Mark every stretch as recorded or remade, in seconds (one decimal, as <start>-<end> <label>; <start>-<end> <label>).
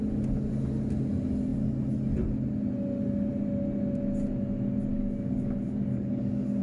0.0-4.9 recorded; 4.9-6.6 remade